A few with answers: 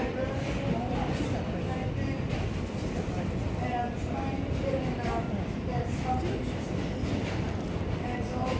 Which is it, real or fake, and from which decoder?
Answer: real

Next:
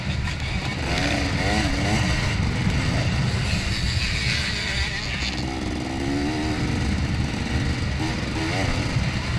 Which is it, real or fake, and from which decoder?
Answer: real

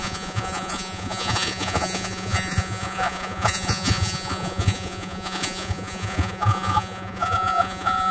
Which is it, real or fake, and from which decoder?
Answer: fake, vocoder, Vocos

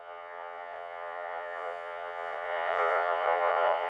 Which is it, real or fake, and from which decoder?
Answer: fake, vocoder, Vocos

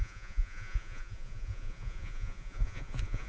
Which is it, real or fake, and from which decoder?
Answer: fake, vocoder, Vocos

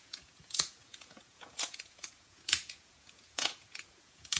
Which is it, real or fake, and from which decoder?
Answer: fake, vocoder, Vocos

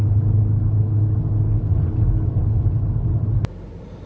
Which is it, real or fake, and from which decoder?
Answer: real